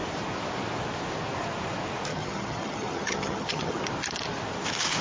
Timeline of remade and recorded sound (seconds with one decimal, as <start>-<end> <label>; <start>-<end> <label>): 0.0-2.1 recorded; 2.1-3.8 remade; 3.8-5.0 recorded